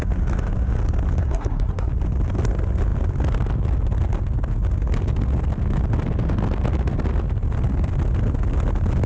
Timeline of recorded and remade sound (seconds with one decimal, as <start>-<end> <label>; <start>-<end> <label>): 0.0-1.2 recorded; 1.2-1.9 remade; 1.9-9.1 recorded